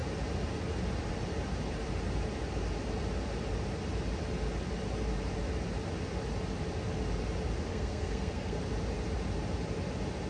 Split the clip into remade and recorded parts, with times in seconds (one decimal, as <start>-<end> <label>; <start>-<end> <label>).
0.0-7.7 recorded; 7.7-8.6 remade; 8.6-10.3 recorded